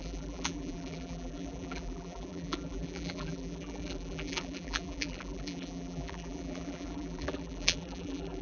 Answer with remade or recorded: remade